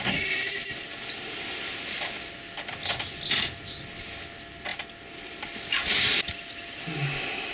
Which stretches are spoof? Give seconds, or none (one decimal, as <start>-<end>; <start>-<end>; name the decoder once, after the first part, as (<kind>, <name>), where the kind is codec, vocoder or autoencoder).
none